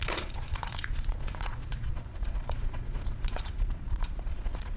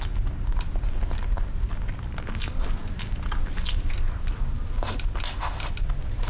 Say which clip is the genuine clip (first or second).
second